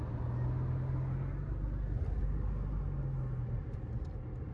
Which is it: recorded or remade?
recorded